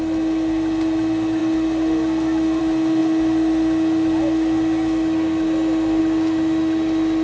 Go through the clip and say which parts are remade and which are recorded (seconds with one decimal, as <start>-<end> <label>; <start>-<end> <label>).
0.0-7.2 recorded